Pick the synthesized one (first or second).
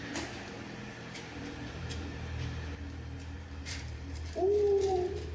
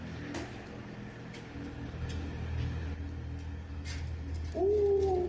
first